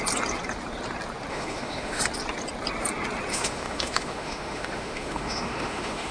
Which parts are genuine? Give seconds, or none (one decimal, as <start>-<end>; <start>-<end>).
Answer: 0.0-1.3; 2.0-3.3

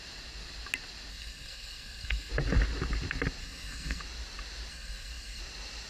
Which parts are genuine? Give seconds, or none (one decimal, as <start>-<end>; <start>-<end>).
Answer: 0.0-1.1; 2.3-3.4; 4.0-4.7; 5.4-5.9

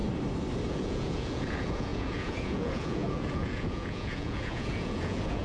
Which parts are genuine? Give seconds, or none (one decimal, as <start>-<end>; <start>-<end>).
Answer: 0.0-0.7

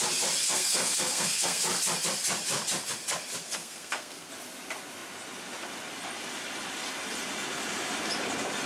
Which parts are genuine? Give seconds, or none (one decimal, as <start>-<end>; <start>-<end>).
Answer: 0.0-0.4; 1.6-3.4; 4.3-8.7

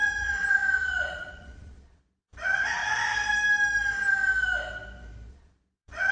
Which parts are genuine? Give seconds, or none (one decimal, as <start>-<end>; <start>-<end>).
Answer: 2.8-5.3

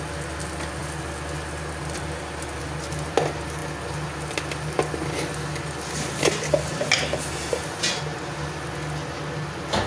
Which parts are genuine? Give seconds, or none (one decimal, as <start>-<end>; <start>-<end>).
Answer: 0.0-9.9

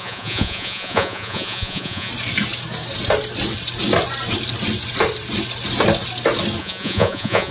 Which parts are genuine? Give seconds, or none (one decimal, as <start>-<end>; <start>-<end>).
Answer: 2.1-6.6

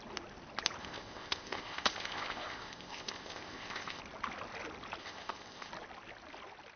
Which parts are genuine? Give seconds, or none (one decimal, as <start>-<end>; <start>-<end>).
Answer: 0.0-0.8; 4.0-5.0; 5.7-6.8